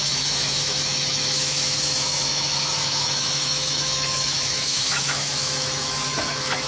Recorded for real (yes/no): no